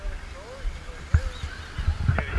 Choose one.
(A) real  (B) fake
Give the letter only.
A